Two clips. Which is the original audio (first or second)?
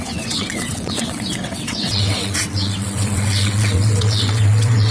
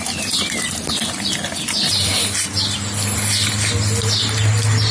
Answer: second